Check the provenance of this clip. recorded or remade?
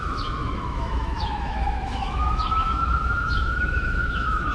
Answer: remade